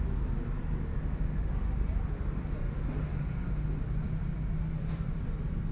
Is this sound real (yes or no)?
yes